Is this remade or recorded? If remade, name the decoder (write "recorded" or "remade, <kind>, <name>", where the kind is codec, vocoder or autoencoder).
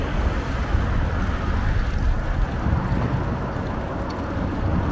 recorded